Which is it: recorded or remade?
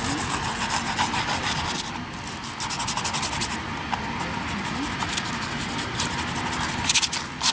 recorded